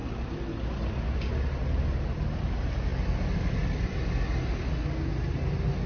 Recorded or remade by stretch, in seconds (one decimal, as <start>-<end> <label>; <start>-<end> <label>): 0.0-5.9 recorded